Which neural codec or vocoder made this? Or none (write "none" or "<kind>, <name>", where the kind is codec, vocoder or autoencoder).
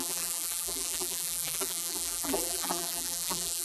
vocoder, BigVGAN v2